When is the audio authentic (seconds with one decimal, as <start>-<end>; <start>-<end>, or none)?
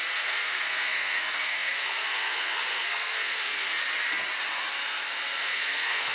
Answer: 3.8-5.4